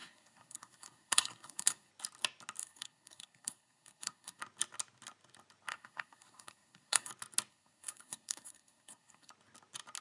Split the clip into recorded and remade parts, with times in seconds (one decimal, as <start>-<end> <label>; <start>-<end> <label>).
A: 0.0-1.9 remade; 1.9-2.6 recorded; 2.6-4.4 remade; 4.4-5.7 recorded; 5.7-7.1 remade; 7.1-7.5 recorded; 7.5-9.3 remade; 9.3-10.0 recorded

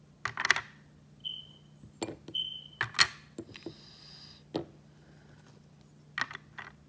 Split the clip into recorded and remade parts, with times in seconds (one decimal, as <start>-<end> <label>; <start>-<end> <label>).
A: 0.0-6.9 recorded

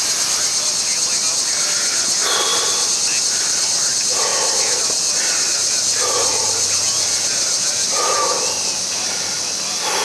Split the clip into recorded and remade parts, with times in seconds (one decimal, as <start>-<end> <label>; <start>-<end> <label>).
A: 0.0-10.0 recorded

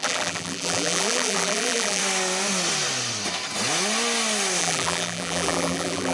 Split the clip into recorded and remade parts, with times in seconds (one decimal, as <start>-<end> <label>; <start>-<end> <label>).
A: 0.0-2.0 remade; 2.0-4.6 recorded; 4.6-6.1 remade

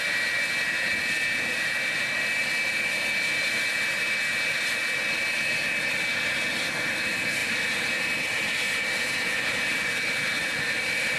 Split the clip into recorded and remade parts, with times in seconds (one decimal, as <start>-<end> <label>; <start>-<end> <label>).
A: 0.0-11.2 recorded

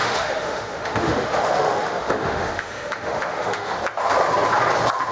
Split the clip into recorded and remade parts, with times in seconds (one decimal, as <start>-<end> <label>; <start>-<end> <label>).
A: 0.0-3.8 remade; 3.8-5.1 recorded